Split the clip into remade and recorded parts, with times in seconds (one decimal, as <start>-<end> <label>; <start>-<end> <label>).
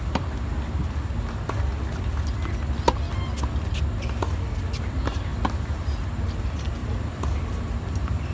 0.0-6.8 recorded; 6.8-7.5 remade; 7.5-8.3 recorded